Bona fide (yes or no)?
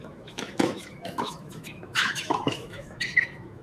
no